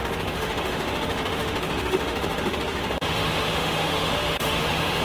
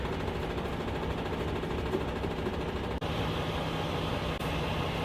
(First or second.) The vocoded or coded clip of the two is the first